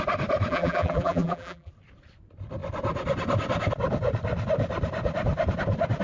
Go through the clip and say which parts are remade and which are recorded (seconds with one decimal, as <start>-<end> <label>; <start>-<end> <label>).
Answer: 0.0-0.5 recorded; 0.5-1.7 remade; 1.7-6.0 recorded